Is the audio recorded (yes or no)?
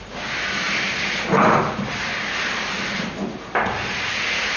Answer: yes